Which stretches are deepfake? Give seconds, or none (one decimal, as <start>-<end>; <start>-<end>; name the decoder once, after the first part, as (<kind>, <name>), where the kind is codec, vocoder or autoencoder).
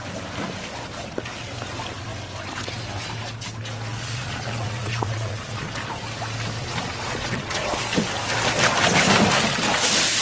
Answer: 3.9-5.7 (vocoder, Vocos); 6.6-7.6